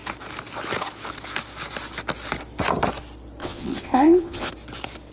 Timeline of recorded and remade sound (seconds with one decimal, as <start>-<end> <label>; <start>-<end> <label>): 0.0-3.4 recorded; 3.4-4.5 remade; 4.5-5.1 recorded